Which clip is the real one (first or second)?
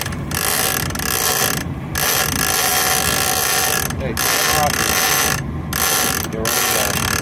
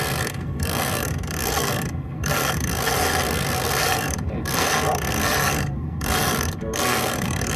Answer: first